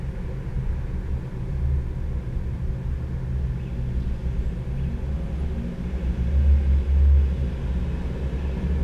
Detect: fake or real real